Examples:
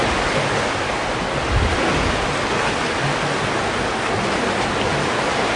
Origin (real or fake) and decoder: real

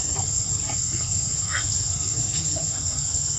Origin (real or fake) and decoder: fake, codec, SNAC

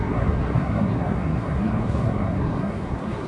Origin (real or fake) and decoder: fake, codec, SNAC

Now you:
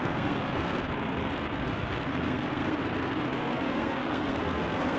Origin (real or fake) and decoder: fake, codec, SNAC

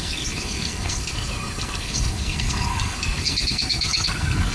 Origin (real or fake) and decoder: fake, codec, SNAC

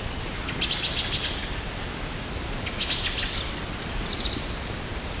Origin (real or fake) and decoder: real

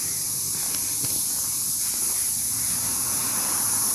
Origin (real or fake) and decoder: real